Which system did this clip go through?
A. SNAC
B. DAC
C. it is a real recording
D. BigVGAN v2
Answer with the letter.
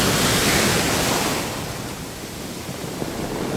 C